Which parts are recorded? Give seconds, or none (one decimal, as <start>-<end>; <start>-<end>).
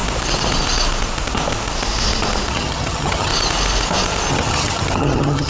0.0-2.5; 3.3-4.3